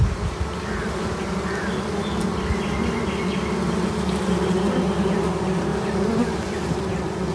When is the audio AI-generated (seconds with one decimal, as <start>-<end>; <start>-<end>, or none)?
none